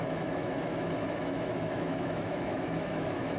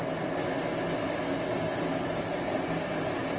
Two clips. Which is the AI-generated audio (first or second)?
first